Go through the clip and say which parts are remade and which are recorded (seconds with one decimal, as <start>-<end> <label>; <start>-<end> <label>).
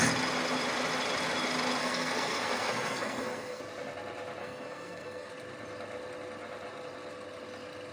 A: 0.0-1.8 recorded; 1.8-3.6 remade; 3.6-4.4 recorded; 4.4-5.3 remade; 5.3-7.9 recorded